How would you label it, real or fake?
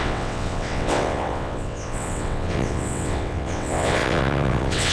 fake